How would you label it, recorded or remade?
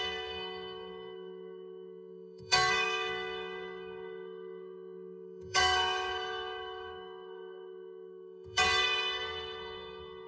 remade